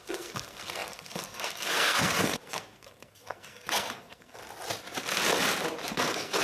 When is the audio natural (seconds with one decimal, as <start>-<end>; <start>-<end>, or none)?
4.4-5.9